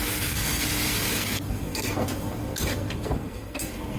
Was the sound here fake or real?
fake